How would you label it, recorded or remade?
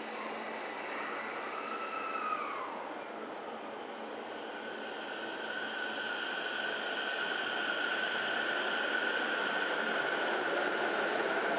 recorded